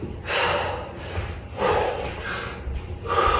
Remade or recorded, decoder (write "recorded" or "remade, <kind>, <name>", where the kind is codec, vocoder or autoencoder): recorded